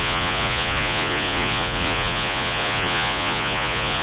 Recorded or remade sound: remade